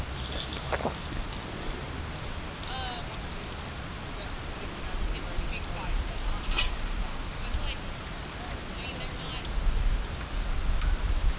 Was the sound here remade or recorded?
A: recorded